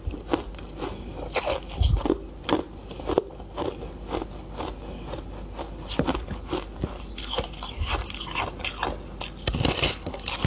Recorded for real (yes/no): yes